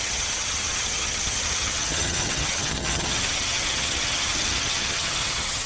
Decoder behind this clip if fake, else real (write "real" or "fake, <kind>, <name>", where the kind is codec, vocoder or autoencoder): fake, vocoder, HiFi-GAN